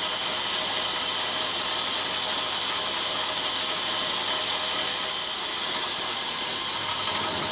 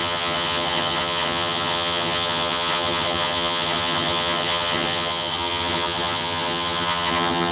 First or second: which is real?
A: first